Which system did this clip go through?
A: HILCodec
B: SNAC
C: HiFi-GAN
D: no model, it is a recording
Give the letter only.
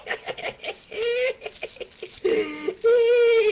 D